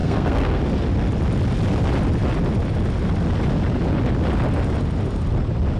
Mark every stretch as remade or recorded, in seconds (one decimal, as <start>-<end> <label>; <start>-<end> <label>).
0.0-0.6 remade; 0.6-5.8 recorded